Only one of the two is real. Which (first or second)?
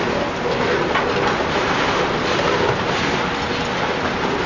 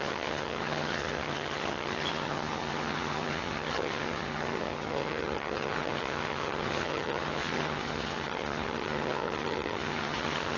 first